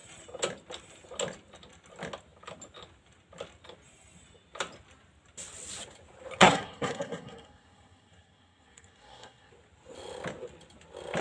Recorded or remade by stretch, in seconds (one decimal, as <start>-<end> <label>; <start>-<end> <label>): 0.0-6.4 recorded; 6.4-9.5 remade; 9.5-11.2 recorded